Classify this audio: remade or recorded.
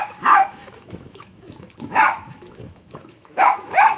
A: remade